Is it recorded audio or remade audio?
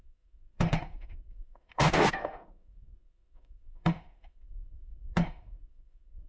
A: remade